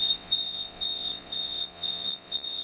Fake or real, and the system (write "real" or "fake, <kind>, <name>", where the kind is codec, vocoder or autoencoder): fake, vocoder, WaveNeXt